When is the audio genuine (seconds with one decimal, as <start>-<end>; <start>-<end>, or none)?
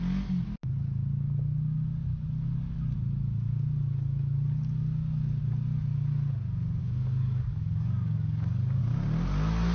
0.0-6.8; 8.8-9.7